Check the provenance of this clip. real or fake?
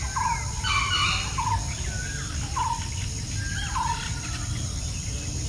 real